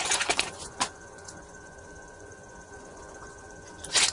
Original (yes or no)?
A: no